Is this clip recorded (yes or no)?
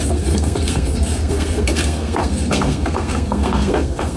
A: no